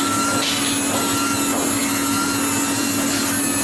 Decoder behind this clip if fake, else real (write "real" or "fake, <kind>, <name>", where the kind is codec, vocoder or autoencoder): real